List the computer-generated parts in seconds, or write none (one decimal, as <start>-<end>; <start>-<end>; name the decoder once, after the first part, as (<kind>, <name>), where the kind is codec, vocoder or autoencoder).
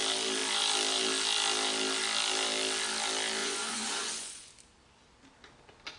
3.4-4.5 (vocoder, Vocos)